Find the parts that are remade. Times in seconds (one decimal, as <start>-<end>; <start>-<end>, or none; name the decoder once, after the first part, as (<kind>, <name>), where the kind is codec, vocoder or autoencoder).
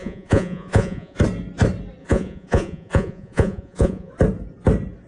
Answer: 0.0-1.2 (vocoder, Vocos); 2.0-4.1